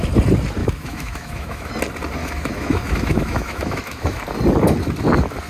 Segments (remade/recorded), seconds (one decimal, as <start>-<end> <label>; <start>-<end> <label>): 0.0-0.6 recorded; 0.6-1.7 remade; 1.7-2.2 recorded; 2.2-4.2 remade; 4.2-5.5 recorded